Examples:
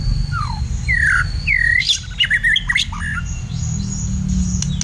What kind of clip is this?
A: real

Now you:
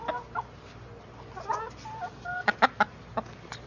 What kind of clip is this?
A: real